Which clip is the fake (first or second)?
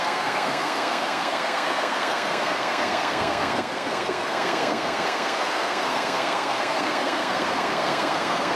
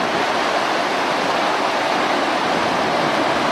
first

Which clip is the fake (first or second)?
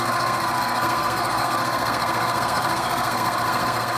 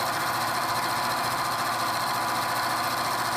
first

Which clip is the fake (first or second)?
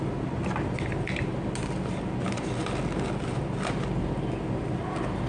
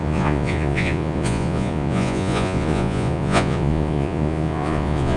second